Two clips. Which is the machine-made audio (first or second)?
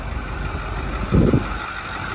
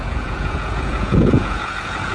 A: second